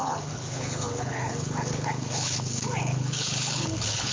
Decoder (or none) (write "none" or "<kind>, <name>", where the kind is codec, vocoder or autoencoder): codec, HILCodec